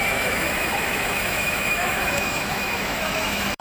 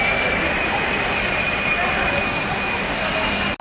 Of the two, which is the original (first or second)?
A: second